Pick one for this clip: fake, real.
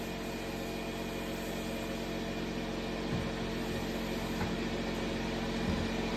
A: real